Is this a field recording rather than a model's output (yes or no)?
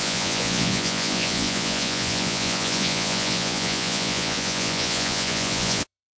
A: no